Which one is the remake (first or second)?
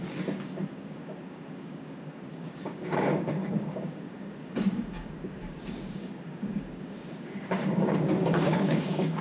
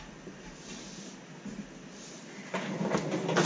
first